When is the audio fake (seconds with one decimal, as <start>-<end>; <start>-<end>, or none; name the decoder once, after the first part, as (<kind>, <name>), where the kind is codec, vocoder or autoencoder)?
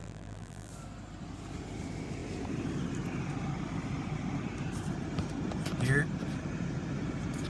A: 0.0-0.7 (vocoder, BigVGAN v2)